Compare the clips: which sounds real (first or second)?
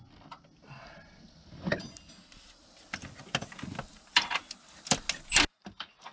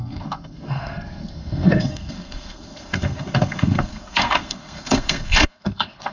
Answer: first